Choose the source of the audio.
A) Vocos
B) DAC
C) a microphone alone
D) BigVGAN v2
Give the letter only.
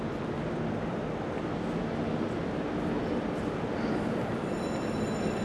C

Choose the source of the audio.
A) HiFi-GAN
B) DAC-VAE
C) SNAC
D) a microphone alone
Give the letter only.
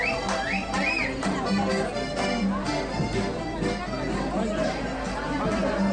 D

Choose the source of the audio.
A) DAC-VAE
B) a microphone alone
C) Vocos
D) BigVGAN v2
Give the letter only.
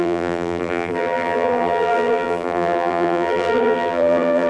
D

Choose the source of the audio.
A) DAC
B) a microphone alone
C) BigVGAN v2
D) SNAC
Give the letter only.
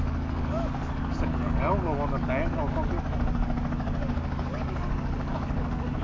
A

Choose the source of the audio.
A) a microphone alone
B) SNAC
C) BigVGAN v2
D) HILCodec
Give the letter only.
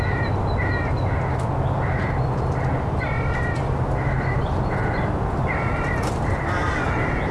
A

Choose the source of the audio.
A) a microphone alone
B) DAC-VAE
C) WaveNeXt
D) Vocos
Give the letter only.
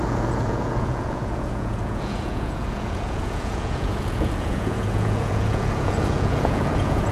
D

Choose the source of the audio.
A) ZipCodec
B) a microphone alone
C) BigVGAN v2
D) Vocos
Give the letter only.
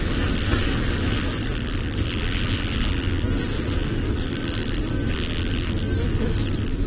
B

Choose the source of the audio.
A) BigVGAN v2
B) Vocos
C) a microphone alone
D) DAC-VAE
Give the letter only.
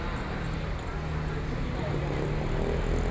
C